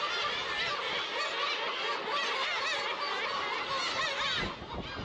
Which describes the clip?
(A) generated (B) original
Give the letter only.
B